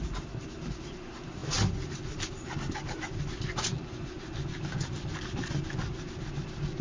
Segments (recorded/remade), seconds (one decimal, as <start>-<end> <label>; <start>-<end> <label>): 0.0-6.8 recorded